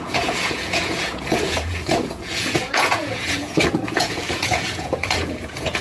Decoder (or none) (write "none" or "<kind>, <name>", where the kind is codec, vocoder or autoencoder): vocoder, Vocos